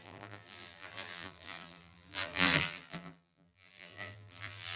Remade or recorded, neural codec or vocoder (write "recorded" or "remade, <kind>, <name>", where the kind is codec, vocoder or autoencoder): remade, vocoder, BigVGAN v2